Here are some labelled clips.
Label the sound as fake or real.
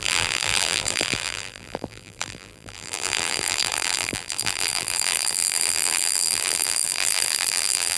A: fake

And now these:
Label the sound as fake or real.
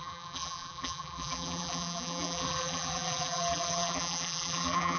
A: fake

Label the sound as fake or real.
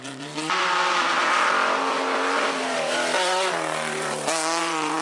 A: fake